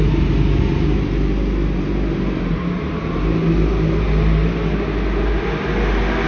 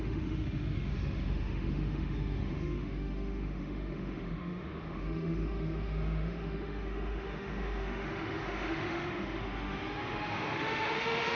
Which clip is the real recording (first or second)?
first